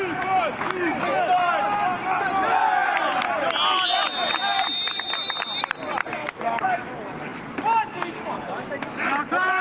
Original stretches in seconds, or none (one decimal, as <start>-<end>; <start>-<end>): 0.0-6.2; 6.7-9.6